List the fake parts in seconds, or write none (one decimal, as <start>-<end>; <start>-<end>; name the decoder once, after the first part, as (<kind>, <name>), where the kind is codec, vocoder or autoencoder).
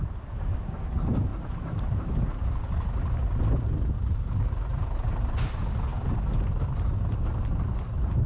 1.3-2.1 (vocoder, BigVGAN v2); 4.7-5.4; 5.9-7.0